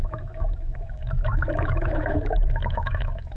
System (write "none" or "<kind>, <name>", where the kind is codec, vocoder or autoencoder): autoencoder, DAC-VAE